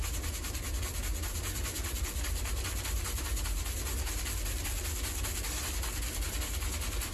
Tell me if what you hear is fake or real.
real